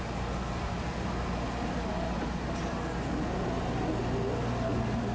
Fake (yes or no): no